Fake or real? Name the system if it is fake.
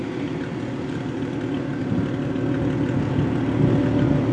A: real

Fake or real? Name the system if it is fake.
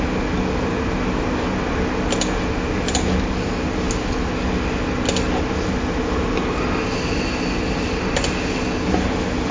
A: real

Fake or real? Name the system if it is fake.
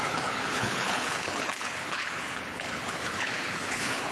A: fake, codec, HILCodec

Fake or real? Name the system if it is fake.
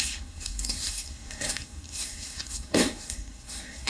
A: fake, codec, SNAC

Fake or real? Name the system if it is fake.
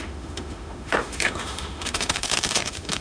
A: fake, autoencoder, DAC-VAE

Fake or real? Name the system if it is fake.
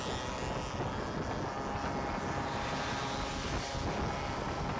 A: real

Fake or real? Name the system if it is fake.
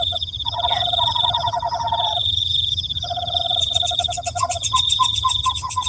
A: fake, vocoder, HiFi-GAN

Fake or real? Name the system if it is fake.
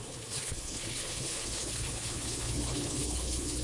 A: fake, codec, HILCodec